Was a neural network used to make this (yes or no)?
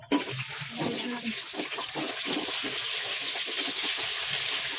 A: no